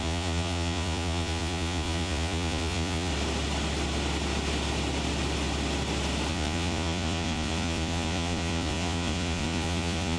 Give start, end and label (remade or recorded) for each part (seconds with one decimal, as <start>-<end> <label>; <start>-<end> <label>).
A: 0.0-3.1 remade; 3.1-6.3 recorded; 6.3-10.2 remade